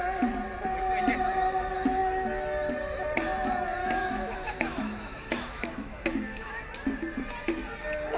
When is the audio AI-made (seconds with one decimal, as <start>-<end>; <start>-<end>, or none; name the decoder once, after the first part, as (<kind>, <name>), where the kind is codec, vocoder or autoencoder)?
3.8-6.5 (autoencoder, DAC-VAE)